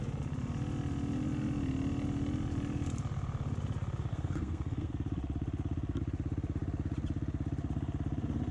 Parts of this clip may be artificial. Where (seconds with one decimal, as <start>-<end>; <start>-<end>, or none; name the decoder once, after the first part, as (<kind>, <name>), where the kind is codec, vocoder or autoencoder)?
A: 4.1-4.9 (codec, SNAC)